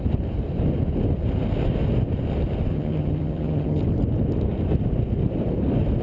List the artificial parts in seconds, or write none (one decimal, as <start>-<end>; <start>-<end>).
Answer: 2.7-3.8